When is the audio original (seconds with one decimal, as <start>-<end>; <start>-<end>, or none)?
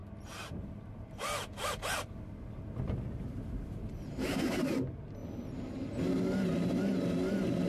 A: 0.0-0.7; 5.2-6.8